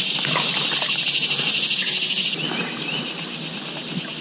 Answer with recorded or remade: recorded